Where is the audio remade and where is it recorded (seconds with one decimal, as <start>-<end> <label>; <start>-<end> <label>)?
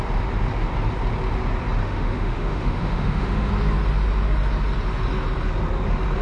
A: 0.0-1.8 recorded; 1.8-3.5 remade; 3.5-6.2 recorded